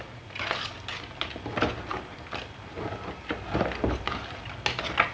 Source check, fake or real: real